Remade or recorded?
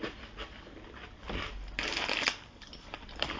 recorded